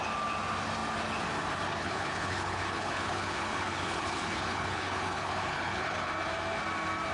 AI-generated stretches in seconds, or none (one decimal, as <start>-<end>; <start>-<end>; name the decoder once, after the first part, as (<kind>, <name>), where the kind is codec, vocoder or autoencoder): 1.8-6.1 (codec, HILCodec)